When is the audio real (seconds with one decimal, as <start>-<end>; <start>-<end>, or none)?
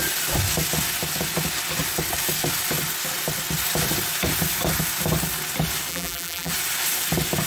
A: 0.0-5.9; 6.5-7.5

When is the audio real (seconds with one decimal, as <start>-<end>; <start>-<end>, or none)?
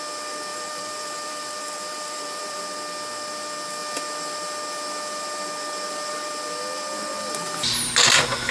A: 0.0-0.5; 2.6-8.5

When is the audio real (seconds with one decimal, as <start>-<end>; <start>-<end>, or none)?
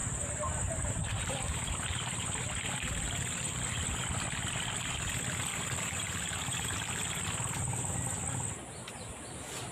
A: 3.6-5.5; 6.9-9.7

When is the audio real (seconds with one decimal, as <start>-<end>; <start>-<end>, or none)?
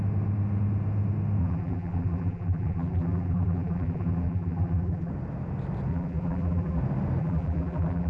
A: 0.0-1.4; 5.1-5.9; 6.8-7.2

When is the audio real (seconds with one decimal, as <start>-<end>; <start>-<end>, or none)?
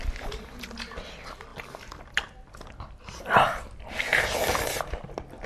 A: 0.0-5.5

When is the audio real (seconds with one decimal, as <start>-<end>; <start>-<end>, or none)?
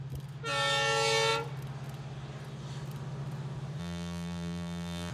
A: 0.0-3.8